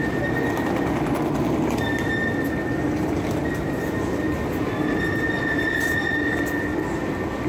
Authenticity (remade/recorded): recorded